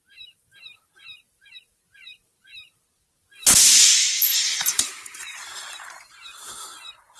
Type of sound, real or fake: fake